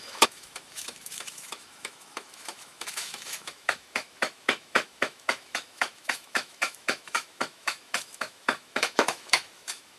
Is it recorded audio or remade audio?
remade